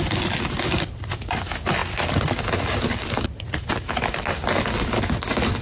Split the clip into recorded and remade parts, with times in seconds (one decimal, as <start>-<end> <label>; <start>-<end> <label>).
0.0-5.6 recorded